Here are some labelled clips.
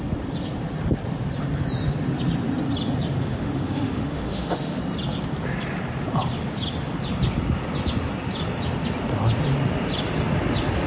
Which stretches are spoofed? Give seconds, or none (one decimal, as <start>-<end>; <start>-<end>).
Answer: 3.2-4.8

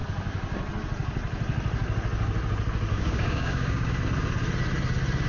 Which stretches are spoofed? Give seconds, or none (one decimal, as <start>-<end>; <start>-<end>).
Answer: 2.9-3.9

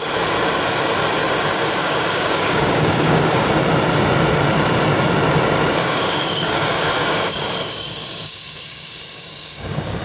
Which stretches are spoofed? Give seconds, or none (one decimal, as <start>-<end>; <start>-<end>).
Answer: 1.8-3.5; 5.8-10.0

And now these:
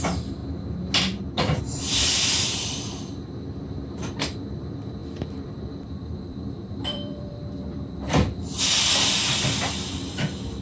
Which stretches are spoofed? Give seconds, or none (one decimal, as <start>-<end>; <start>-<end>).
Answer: 0.0-0.4; 1.6-10.6